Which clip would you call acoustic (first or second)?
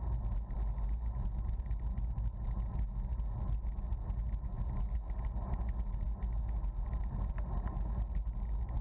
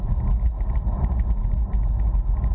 first